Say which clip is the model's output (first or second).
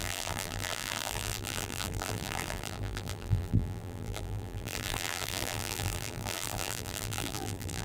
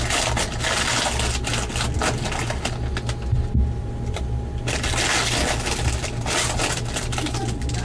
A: first